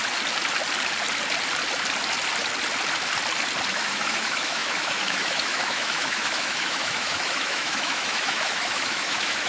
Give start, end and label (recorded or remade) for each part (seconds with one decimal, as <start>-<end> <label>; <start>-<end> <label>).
0.0-3.7 recorded; 3.7-9.5 remade